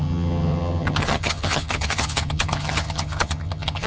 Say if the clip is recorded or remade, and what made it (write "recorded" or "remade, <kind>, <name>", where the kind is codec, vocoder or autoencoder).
remade, vocoder, HiFi-GAN